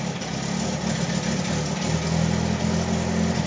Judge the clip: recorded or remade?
recorded